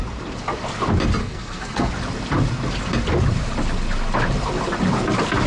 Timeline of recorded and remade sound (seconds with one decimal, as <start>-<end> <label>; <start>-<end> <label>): 0.0-1.2 recorded; 1.2-1.9 remade; 1.9-5.5 recorded